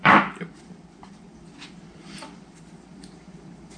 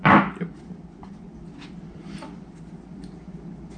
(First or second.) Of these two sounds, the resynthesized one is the first